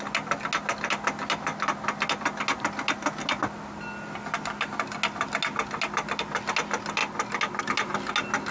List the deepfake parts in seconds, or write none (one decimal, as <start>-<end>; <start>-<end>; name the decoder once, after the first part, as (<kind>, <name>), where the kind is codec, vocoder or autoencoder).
none